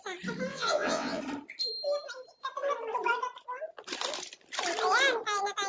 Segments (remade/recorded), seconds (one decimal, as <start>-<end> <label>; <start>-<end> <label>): 0.0-0.5 recorded; 0.5-1.2 remade; 1.2-5.7 recorded

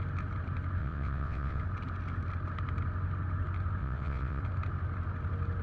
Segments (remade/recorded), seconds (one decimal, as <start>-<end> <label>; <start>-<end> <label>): 0.0-0.8 recorded; 0.8-1.6 remade; 1.6-3.8 recorded; 3.8-4.4 remade; 4.4-5.6 recorded

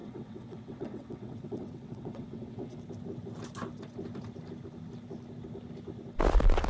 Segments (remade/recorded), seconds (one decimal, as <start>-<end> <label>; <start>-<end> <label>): 0.0-2.8 remade; 2.8-6.7 recorded

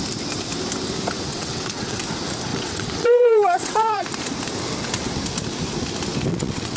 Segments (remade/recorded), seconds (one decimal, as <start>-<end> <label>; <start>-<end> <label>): 0.0-1.3 recorded; 1.3-2.0 remade; 2.0-2.5 recorded; 2.5-4.0 remade; 4.0-6.3 recorded; 6.3-6.8 remade

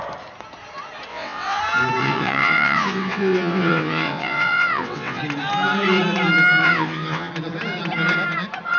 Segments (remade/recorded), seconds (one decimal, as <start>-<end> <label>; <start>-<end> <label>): 0.0-1.1 recorded; 1.1-1.6 remade; 1.6-2.0 recorded; 2.0-5.2 remade; 5.2-6.6 recorded; 6.6-7.3 remade; 7.3-8.8 recorded